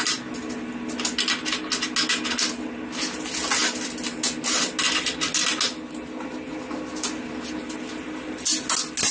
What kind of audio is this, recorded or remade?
recorded